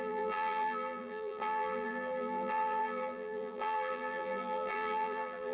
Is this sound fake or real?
fake